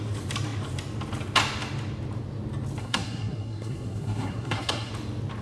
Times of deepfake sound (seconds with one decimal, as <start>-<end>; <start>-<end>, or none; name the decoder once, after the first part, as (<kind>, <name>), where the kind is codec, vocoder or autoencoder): 2.8-4.9 (codec, SNAC)